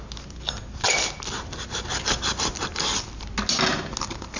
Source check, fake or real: real